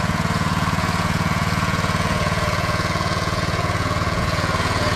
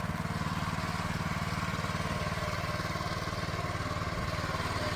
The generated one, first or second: first